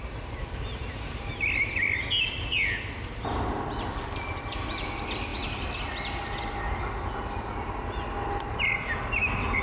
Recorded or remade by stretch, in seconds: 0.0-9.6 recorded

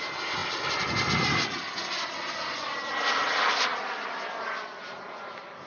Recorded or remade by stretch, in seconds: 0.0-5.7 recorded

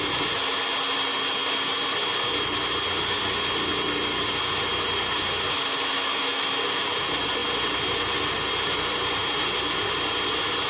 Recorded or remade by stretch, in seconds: 0.0-10.7 recorded

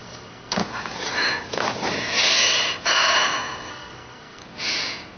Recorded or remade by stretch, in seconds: 0.0-0.6 remade; 0.6-3.7 recorded; 3.7-4.4 remade; 4.4-5.2 recorded

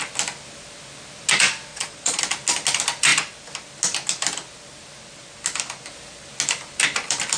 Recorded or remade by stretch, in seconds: 0.0-1.7 recorded; 1.7-2.2 remade; 2.2-7.4 recorded

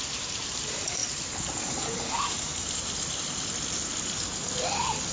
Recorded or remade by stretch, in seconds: 0.0-1.0 remade; 1.0-1.6 recorded; 1.6-2.5 remade; 2.5-5.1 recorded

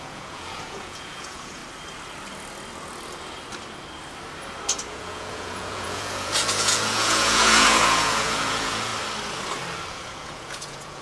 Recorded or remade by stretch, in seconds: 0.0-1.6 remade; 1.6-4.9 recorded; 4.9-8.9 remade; 8.9-9.9 recorded; 9.9-11.0 remade

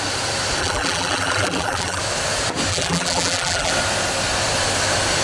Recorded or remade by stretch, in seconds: 0.0-0.6 recorded; 0.6-2.0 remade; 2.0-2.7 recorded; 2.7-3.7 remade; 3.7-5.2 recorded